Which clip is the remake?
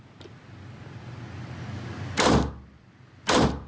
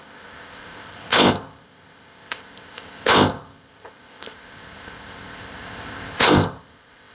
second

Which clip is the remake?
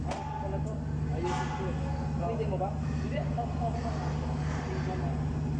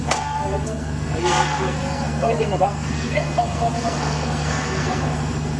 second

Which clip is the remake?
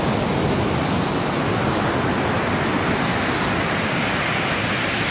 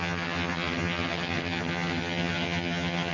second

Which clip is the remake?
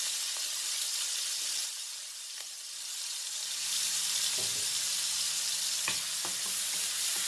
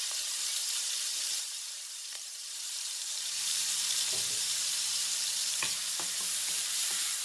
second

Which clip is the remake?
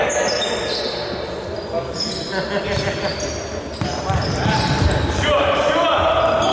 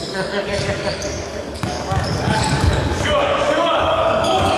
second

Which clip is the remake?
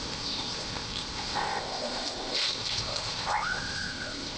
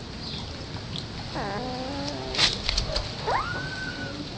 first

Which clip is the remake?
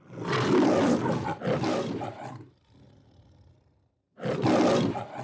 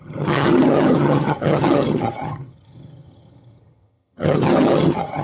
second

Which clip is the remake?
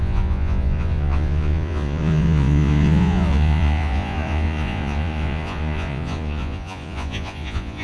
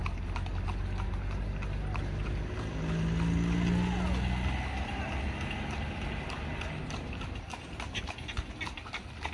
first